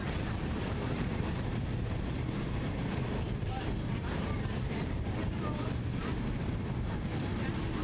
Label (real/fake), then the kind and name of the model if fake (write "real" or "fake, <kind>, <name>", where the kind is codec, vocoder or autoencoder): fake, vocoder, BigVGAN v2